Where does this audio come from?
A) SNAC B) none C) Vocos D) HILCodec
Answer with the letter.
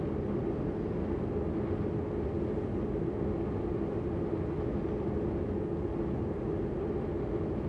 B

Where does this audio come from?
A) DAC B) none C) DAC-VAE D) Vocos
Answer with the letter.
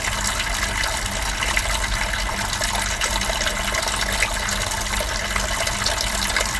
B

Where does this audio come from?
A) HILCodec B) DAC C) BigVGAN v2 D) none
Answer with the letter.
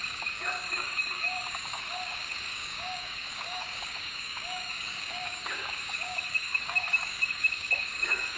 B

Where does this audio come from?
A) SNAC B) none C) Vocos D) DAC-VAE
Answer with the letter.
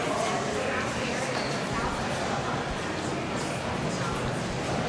B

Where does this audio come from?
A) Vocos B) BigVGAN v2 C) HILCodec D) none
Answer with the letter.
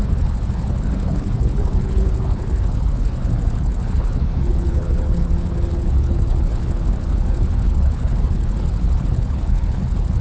C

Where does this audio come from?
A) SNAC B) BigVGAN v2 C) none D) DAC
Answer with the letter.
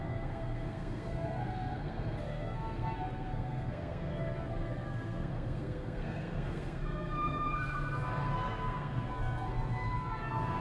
A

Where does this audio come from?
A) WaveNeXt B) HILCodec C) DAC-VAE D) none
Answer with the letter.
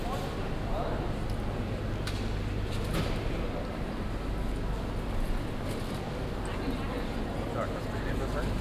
D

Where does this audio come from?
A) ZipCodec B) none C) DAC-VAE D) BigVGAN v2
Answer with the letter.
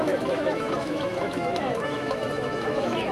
C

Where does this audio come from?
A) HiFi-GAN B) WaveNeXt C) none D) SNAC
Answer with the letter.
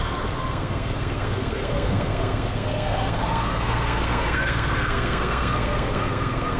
D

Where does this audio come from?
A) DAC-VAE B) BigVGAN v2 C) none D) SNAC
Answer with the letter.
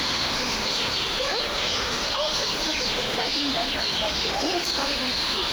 A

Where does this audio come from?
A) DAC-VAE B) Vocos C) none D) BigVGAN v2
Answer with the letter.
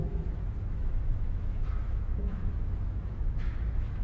A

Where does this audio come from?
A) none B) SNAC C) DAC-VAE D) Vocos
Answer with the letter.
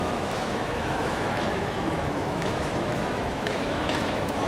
C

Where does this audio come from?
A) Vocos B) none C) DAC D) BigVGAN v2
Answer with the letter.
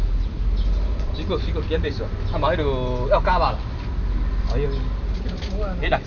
B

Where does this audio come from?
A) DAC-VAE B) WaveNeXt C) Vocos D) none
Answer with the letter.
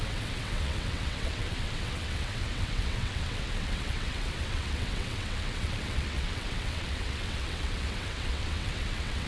B